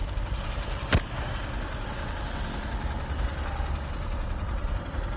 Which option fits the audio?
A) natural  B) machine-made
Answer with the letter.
A